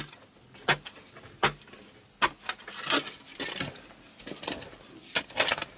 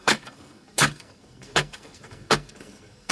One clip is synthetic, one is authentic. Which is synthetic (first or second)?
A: second